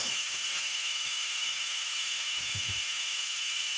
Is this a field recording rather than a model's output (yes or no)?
no